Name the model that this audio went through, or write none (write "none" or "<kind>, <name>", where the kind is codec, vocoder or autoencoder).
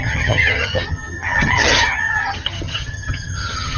vocoder, HiFi-GAN